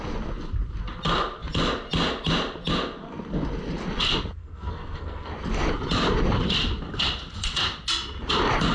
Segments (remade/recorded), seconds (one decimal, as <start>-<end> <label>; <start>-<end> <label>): 0.0-4.4 recorded; 4.4-5.3 remade; 5.3-8.7 recorded